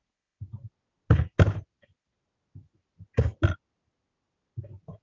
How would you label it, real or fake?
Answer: real